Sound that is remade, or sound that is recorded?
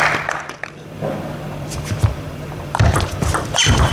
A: remade